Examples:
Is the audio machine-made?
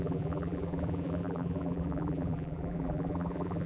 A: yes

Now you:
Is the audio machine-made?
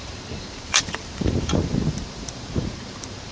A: yes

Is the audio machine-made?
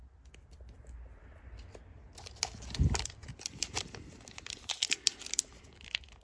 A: no